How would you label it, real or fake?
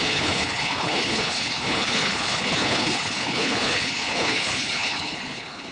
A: fake